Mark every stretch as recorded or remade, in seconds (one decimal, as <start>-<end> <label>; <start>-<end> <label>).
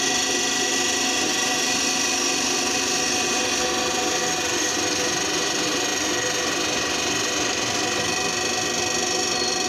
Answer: 0.0-9.7 recorded